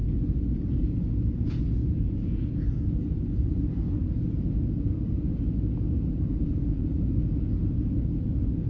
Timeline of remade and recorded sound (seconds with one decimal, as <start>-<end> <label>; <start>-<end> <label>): 0.0-8.7 remade